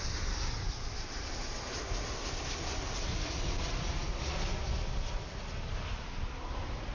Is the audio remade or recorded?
recorded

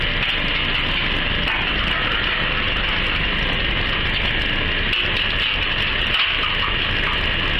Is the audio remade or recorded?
recorded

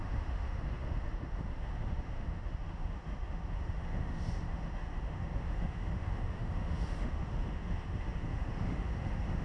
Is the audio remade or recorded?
remade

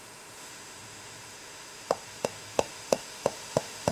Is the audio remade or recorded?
remade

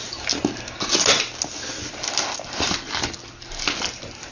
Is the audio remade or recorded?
recorded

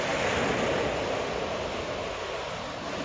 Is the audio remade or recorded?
recorded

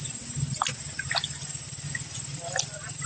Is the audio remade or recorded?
recorded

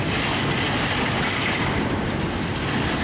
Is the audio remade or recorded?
recorded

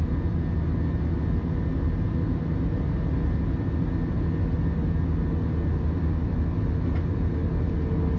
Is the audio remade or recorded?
recorded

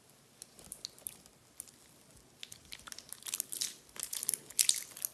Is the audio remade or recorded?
recorded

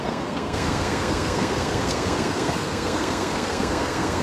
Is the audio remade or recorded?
remade